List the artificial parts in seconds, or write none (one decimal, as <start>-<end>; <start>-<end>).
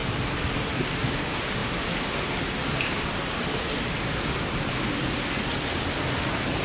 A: none